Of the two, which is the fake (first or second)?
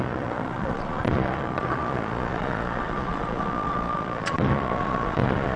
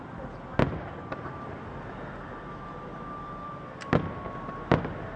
first